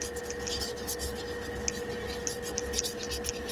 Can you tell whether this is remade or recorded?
recorded